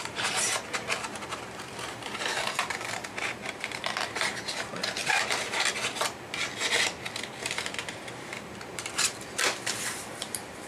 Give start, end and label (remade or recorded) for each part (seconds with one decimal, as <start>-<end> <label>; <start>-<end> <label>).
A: 0.0-4.7 remade; 4.7-7.5 recorded; 7.5-10.7 remade